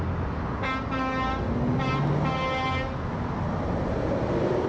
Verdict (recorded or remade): recorded